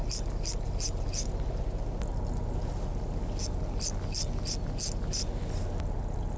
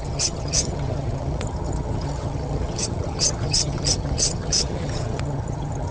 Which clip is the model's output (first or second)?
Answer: second